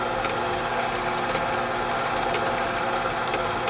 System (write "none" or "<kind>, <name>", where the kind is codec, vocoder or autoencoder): none